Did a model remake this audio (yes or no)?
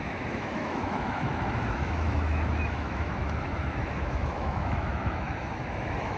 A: yes